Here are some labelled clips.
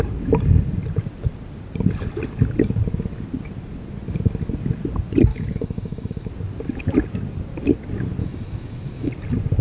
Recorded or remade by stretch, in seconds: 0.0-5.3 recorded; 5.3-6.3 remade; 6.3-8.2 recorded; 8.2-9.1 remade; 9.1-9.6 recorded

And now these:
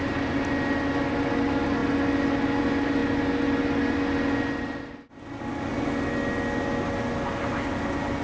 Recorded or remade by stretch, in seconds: 0.0-8.2 recorded

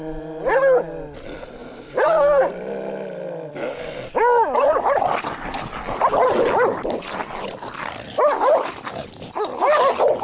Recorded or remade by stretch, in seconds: 0.0-1.6 recorded; 1.6-2.1 remade; 2.1-10.2 recorded

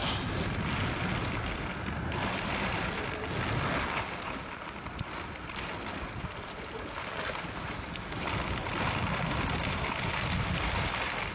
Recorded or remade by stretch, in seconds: 0.0-11.3 recorded

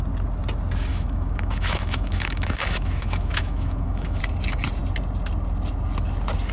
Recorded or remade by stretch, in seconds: 0.0-0.9 recorded; 0.9-4.2 remade; 4.2-6.5 recorded

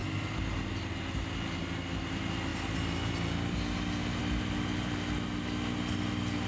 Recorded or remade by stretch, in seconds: 0.0-6.5 recorded

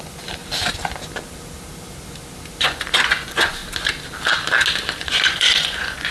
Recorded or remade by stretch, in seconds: 0.0-0.4 remade; 0.4-2.6 recorded; 2.6-3.6 remade; 3.6-5.0 recorded; 5.0-6.1 remade